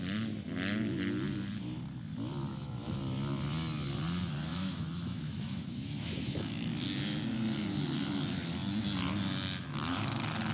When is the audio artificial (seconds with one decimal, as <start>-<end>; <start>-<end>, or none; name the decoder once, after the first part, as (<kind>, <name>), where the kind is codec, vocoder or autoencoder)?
2.5-3.0 (autoencoder, DAC-VAE); 4.5-6.7